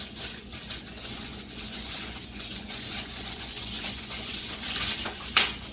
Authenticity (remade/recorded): remade